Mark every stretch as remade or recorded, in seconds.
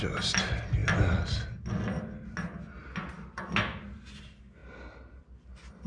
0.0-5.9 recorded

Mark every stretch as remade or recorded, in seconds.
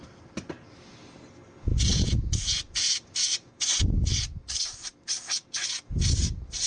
0.0-1.7 recorded; 1.7-3.5 remade; 3.5-6.7 recorded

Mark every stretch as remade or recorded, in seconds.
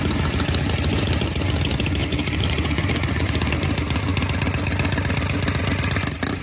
0.0-2.0 recorded; 2.0-3.5 remade; 3.5-6.4 recorded